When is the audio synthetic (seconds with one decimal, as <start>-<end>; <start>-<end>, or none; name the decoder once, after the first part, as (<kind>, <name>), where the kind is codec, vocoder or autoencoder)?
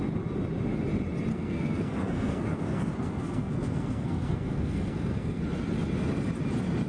1.3-5.4 (codec, SNAC)